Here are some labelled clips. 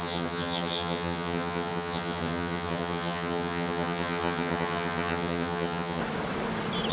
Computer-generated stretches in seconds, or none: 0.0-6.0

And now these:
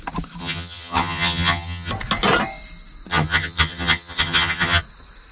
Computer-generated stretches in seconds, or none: 0.4-1.9; 3.1-4.8

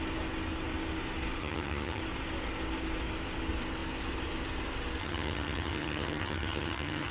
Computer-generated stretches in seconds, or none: 1.4-2.0; 5.0-7.1

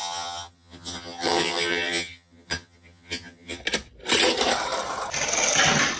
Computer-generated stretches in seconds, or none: 0.0-3.6